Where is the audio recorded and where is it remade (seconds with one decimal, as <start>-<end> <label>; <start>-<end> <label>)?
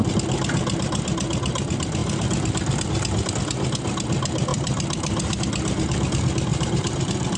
0.0-4.5 recorded; 4.5-5.4 remade; 5.4-6.5 recorded; 6.5-7.4 remade